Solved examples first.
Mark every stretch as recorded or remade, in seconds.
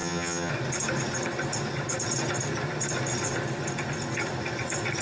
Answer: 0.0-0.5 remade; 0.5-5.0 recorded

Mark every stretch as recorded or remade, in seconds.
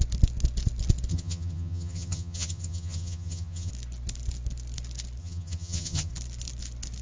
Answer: 0.0-1.1 recorded; 1.1-3.7 remade; 3.7-5.2 recorded; 5.2-6.1 remade; 6.1-7.0 recorded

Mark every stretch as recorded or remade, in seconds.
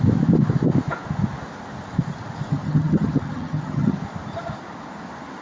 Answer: 0.0-2.5 recorded; 2.5-4.0 remade; 4.0-5.4 recorded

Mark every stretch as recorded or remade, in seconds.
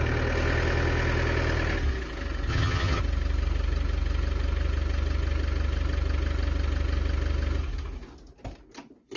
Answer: 0.0-2.5 recorded; 2.5-3.0 remade; 3.0-9.2 recorded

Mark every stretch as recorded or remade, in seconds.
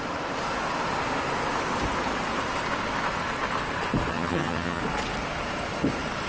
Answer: 0.0-4.1 recorded; 4.1-4.8 remade; 4.8-6.3 recorded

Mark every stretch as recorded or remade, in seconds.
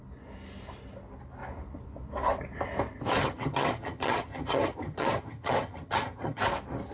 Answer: 0.0-3.2 recorded; 3.2-6.4 remade; 6.4-6.9 recorded